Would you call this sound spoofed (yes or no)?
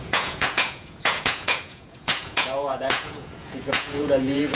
yes